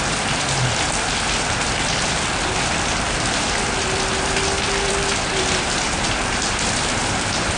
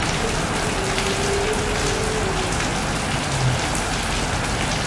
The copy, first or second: first